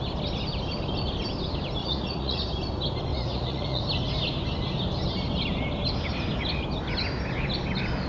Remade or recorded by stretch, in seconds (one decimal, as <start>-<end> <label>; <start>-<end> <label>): 0.0-1.8 recorded; 1.8-2.4 remade; 2.4-3.1 recorded; 3.1-3.8 remade; 3.8-8.1 recorded